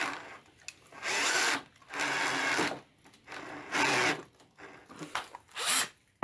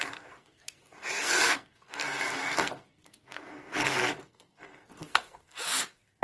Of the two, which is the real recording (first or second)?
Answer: first